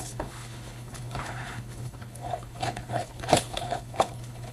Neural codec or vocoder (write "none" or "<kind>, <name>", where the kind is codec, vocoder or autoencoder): codec, HILCodec